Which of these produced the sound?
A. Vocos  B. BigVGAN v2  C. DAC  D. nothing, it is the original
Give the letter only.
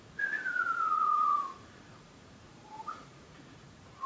A